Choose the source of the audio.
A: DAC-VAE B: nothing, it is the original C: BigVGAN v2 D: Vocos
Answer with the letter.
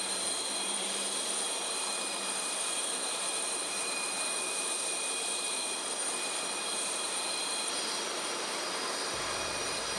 C